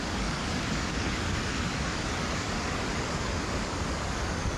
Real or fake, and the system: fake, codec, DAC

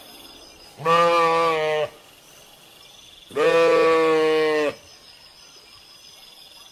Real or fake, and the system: real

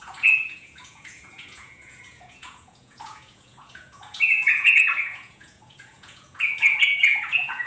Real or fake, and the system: fake, vocoder, Vocos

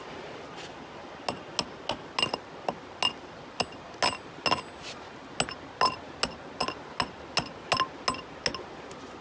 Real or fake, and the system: real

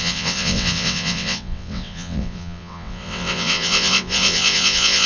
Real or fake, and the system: fake, vocoder, WaveNeXt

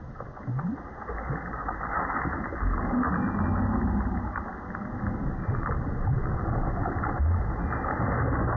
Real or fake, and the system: real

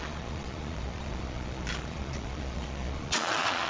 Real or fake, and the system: fake, vocoder, Vocos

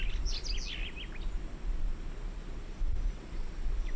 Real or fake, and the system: real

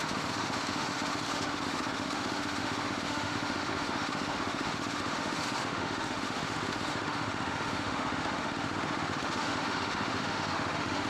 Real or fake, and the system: fake, autoencoder, DAC-VAE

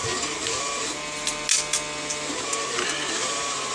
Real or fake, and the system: real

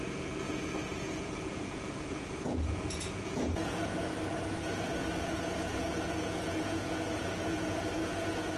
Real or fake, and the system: fake, vocoder, Vocos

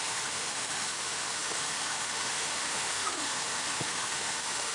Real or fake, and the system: fake, autoencoder, DAC-VAE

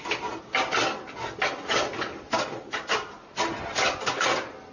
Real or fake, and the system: real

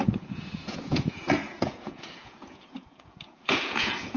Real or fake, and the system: fake, vocoder, Vocos